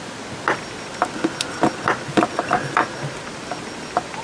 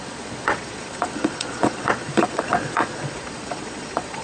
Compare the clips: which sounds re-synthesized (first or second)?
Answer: second